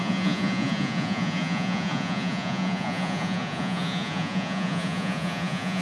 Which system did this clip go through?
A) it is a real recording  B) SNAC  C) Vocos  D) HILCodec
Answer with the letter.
C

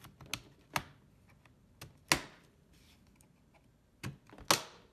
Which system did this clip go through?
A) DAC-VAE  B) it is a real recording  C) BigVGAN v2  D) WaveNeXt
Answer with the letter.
B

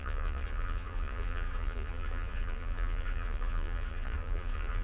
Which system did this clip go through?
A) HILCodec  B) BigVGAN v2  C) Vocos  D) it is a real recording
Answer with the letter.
C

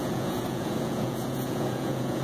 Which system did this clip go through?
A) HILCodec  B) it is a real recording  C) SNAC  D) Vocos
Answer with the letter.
D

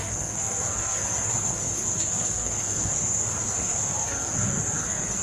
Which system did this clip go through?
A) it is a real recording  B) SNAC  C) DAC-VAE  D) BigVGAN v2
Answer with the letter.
B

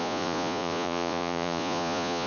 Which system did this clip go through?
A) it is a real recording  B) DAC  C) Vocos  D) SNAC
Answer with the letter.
C